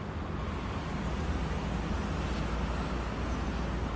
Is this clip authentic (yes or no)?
yes